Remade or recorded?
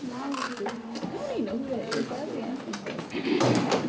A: recorded